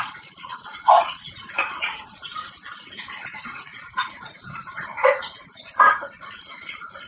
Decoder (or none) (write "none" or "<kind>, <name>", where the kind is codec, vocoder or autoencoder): vocoder, Vocos